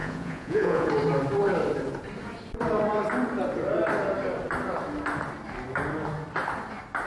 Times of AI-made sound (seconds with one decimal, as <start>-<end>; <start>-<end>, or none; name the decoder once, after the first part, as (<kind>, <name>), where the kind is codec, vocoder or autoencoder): 0.0-0.9 (vocoder, Vocos)